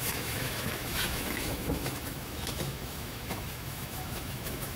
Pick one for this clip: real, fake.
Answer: fake